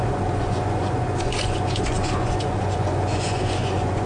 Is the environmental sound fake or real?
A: fake